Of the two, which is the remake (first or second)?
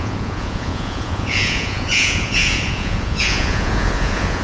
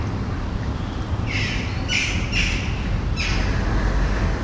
first